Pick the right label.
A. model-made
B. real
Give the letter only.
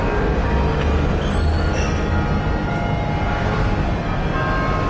B